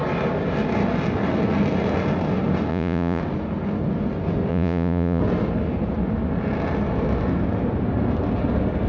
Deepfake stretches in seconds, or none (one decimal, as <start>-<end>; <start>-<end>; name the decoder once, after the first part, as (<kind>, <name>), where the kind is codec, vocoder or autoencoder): 2.7-3.2 (vocoder, Vocos); 4.5-5.2